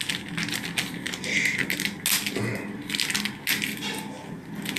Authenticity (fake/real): real